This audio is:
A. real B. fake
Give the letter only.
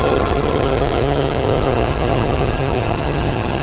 B